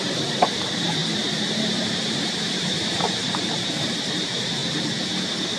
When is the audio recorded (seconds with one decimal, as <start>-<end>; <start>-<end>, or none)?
4.6-5.6